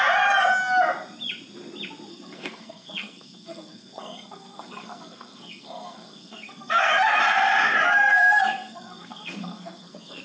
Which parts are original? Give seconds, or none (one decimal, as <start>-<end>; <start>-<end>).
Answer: 0.0-2.1; 6.9-8.1